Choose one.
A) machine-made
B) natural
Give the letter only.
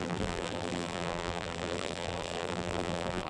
A